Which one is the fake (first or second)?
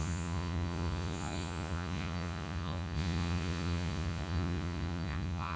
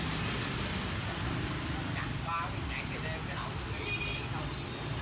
first